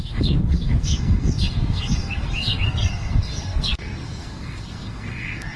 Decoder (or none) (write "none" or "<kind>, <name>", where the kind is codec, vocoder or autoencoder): codec, SNAC